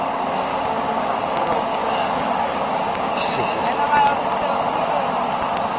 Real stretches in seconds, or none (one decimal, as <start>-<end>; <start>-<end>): 0.0-0.5; 1.2-1.7; 3.6-5.8